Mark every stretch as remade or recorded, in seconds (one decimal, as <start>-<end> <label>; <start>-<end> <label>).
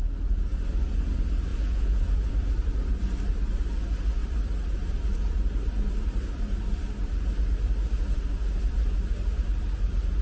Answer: 0.0-1.5 recorded; 1.5-2.3 remade; 2.3-10.2 recorded